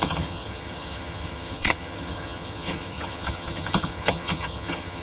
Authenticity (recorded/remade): remade